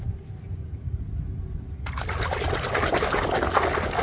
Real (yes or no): yes